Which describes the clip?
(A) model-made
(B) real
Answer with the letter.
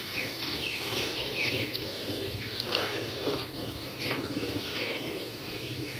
A